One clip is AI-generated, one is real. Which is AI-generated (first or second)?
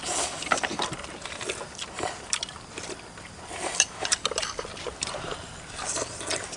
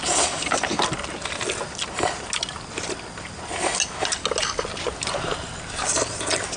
first